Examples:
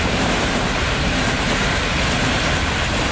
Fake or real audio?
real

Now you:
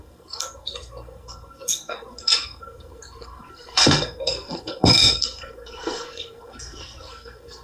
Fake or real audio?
fake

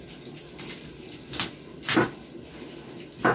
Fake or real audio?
real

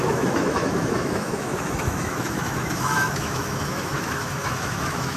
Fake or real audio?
fake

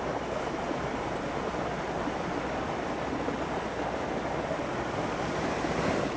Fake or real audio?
real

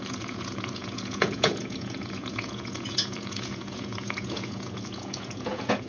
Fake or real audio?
fake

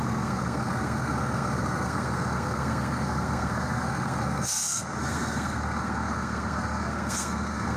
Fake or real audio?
fake